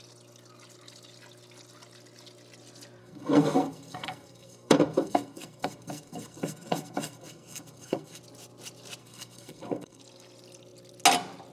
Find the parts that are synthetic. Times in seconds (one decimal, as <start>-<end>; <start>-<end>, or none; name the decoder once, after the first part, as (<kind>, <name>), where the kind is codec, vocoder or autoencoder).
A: 3.0-8.2 (codec, SNAC); 9.0-10.0